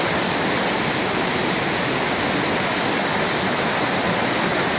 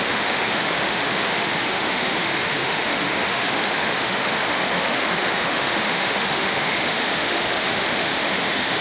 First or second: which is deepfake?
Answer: second